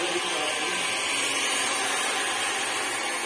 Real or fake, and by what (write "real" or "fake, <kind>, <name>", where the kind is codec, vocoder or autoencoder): real